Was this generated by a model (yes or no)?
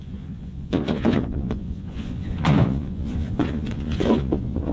yes